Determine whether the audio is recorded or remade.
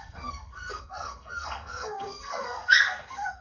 remade